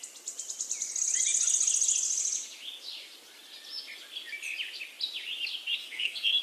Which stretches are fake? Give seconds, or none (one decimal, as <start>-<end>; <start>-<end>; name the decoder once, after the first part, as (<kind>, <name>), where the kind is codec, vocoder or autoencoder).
5.8-6.4 (codec, SNAC)